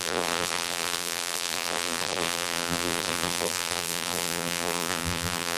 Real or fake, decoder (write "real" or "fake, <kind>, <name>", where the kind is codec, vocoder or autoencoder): fake, vocoder, BigVGAN v2